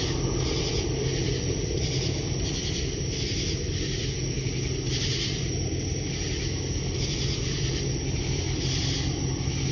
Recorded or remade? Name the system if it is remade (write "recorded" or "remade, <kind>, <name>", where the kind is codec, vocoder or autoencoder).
recorded